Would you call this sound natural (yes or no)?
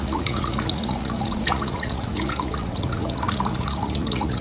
no